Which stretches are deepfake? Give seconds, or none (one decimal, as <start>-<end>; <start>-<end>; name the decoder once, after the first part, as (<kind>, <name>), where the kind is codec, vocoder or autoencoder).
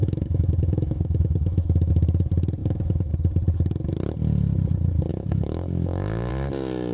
0.0-1.9 (autoencoder, DAC-VAE); 2.6-3.1; 5.1-6.3